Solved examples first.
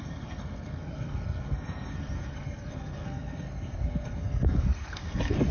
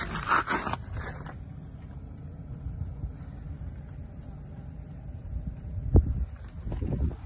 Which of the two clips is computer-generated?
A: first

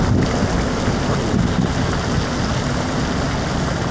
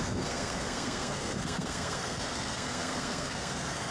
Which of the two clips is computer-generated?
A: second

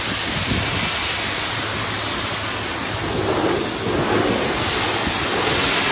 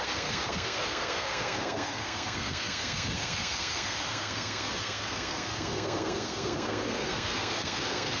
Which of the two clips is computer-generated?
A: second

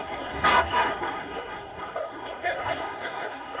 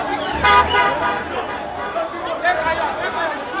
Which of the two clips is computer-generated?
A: first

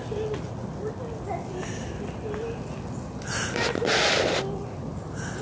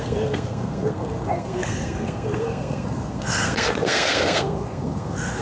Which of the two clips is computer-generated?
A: second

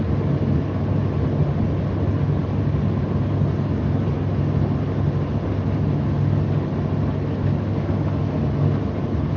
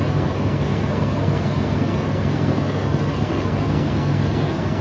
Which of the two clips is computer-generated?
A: second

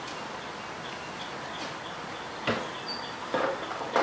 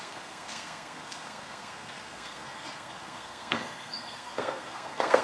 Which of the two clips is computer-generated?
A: second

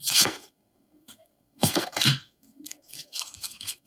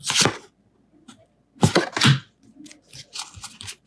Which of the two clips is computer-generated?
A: first